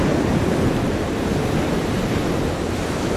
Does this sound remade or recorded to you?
recorded